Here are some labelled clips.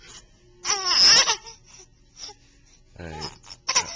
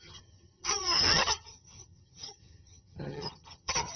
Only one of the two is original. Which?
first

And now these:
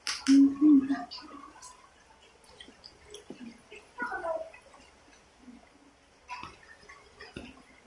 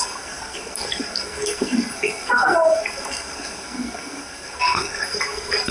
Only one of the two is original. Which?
first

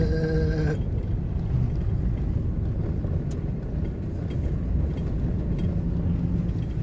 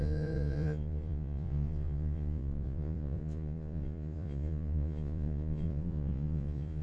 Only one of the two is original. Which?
first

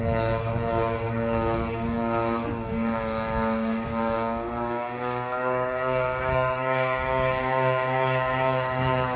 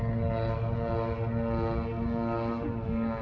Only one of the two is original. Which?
second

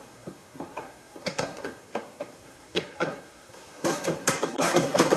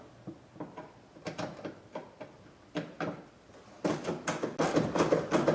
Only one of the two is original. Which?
second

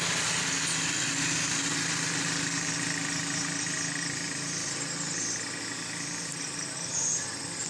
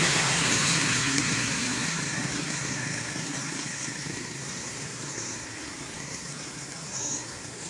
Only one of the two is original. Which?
first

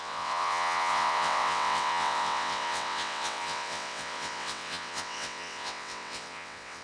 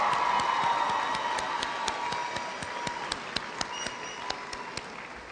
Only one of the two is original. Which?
second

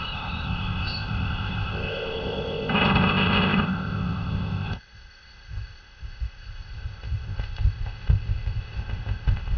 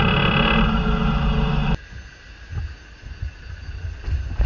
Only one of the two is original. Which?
second